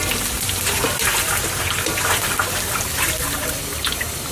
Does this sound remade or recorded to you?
recorded